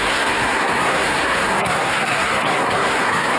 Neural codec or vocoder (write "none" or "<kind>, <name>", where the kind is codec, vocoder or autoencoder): codec, SNAC